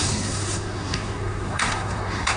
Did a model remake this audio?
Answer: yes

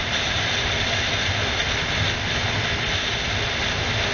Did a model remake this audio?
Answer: no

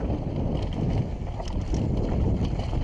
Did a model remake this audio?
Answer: no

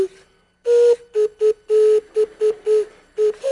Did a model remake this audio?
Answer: no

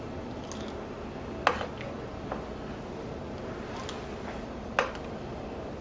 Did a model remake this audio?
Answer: no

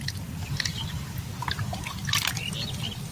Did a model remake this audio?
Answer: no